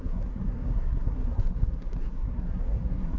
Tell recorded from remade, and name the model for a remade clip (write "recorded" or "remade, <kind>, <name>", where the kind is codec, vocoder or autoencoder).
remade, codec, SNAC